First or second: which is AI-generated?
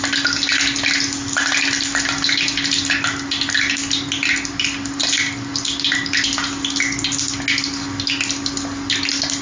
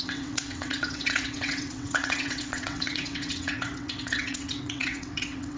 second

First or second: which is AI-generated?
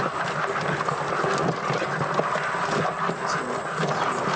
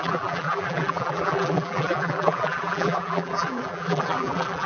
second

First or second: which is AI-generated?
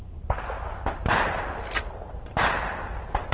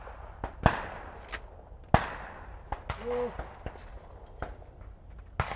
first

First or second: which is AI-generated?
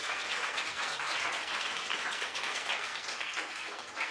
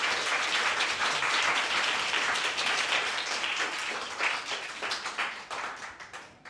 first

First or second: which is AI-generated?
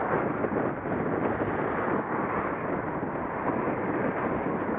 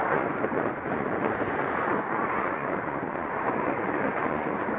second